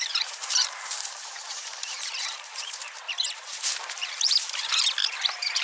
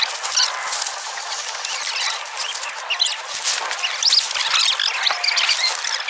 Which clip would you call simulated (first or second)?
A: first